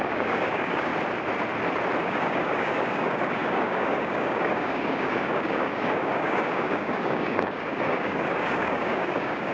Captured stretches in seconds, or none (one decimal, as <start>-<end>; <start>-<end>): 0.9-2.0